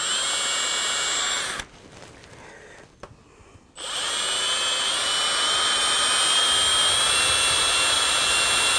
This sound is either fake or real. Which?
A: real